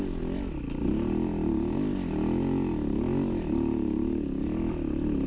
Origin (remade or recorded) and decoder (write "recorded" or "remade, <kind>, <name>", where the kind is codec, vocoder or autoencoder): recorded